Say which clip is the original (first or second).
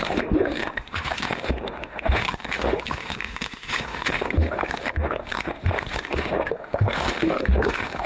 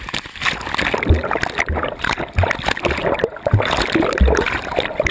second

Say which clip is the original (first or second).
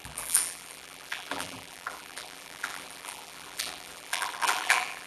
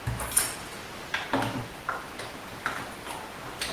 second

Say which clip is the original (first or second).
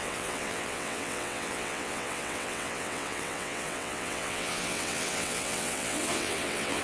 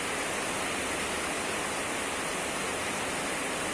second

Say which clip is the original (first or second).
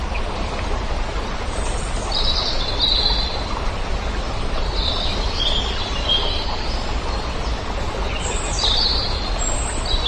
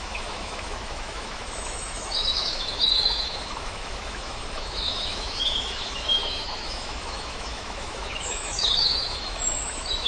first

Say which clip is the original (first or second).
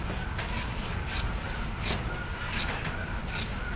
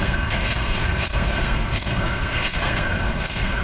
first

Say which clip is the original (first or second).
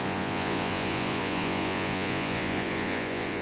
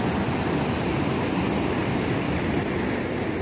second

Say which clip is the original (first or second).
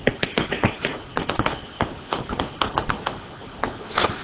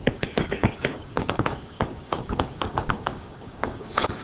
first